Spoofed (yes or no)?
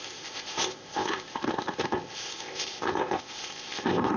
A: yes